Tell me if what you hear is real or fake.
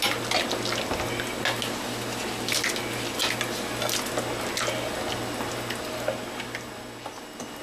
real